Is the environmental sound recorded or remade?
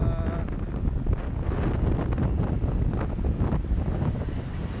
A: recorded